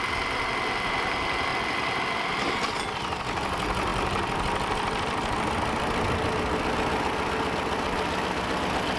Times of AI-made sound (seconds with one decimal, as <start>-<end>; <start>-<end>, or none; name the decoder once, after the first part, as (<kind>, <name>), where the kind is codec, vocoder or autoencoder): none